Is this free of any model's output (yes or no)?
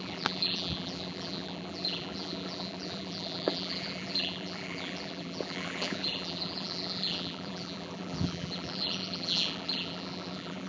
no